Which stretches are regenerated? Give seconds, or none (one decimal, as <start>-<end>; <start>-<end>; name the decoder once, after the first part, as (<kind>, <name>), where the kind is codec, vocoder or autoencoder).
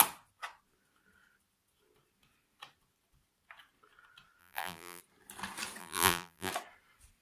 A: 4.4-5.0 (vocoder, BigVGAN v2); 5.8-6.5